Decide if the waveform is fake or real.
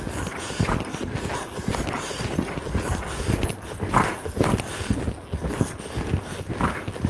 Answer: real